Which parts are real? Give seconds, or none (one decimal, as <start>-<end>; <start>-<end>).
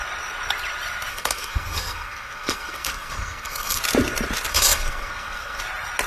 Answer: 0.0-1.1; 3.8-4.5; 5.6-6.1